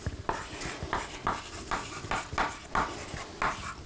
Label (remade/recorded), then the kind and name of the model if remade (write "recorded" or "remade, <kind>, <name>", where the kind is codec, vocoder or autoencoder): recorded